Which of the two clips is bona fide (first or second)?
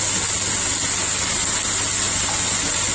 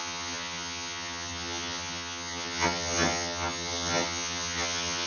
first